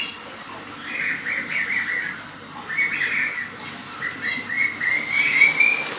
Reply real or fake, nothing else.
real